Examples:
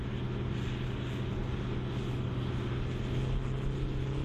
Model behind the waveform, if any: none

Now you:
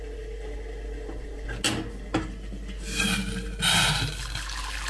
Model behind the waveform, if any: none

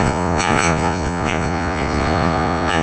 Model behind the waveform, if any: vocoder, Vocos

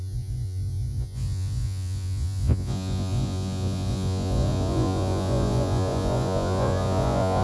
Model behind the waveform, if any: vocoder, Vocos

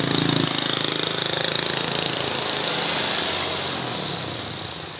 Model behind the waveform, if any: none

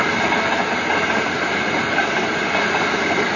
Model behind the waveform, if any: none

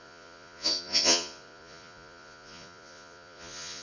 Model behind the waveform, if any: vocoder, Vocos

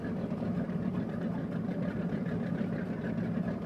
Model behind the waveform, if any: none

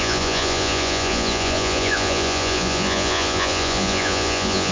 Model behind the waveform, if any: vocoder, Vocos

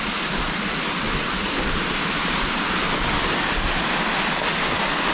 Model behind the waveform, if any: none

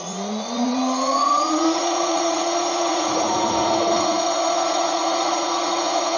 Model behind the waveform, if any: vocoder, Vocos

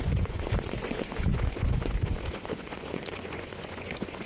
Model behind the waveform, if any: vocoder, Vocos